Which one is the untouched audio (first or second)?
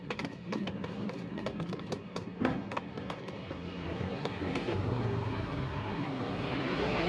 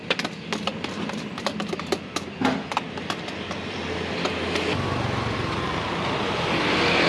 second